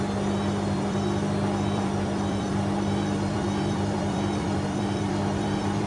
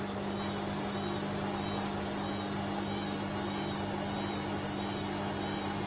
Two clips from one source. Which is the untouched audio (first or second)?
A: second